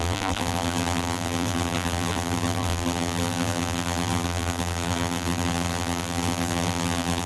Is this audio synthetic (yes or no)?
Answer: yes